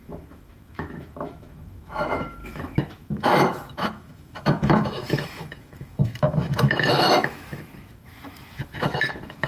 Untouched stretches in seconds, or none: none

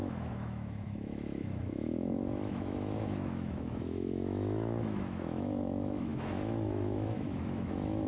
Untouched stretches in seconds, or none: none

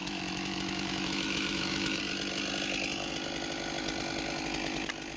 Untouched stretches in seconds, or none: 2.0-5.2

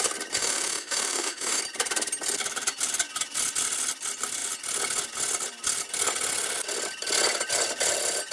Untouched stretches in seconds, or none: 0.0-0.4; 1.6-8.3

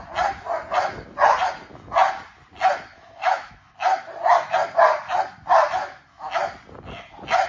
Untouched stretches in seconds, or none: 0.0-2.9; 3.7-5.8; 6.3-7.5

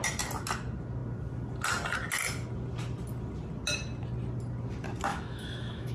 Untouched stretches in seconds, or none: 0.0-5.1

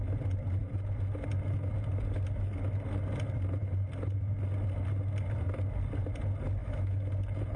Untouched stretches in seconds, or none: 0.0-6.6; 7.1-7.6